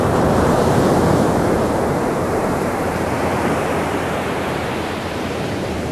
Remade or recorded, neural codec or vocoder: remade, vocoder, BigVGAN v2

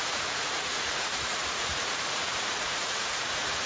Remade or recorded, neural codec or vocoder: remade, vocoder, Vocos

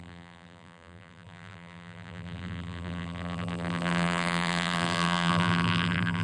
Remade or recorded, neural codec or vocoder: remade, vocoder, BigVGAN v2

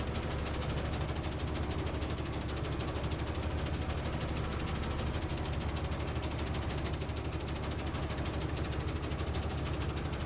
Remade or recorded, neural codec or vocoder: recorded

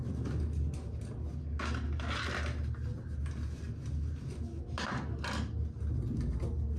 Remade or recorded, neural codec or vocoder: recorded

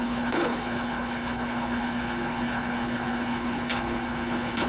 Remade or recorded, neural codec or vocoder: remade, codec, HILCodec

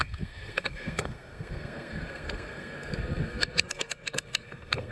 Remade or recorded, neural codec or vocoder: remade, codec, SNAC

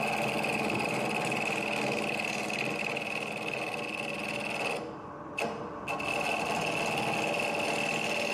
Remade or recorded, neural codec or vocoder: recorded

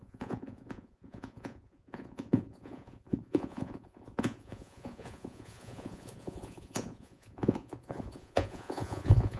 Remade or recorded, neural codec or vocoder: remade, vocoder, Vocos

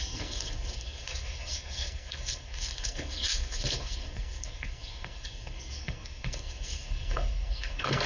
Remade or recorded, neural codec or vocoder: remade, codec, SNAC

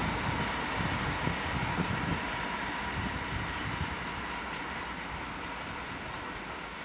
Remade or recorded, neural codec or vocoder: recorded